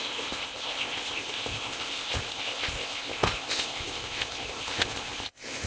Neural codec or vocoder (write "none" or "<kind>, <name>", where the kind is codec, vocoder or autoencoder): codec, ZipCodec